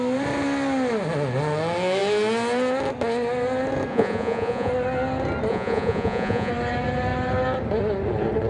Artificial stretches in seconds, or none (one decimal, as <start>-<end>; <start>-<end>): 3.9-4.7; 5.5-6.5